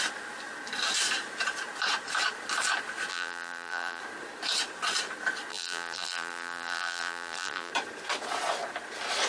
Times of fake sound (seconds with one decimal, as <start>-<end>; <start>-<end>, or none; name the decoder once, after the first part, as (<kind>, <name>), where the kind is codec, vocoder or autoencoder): 3.1-4.0 (vocoder, BigVGAN v2); 5.5-7.7